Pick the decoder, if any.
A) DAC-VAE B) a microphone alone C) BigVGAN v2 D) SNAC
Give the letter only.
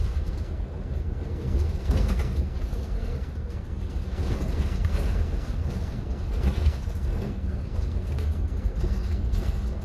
D